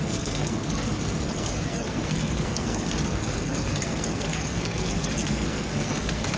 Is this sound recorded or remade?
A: remade